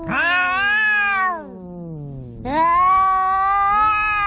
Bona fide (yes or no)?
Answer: yes